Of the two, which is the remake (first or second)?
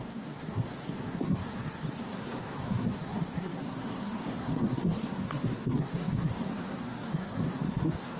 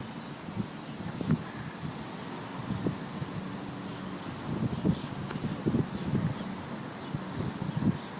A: first